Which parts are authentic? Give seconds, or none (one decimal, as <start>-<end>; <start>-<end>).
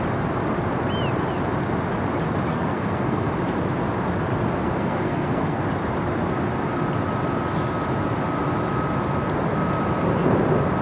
0.0-2.5; 3.3-4.6; 5.6-10.8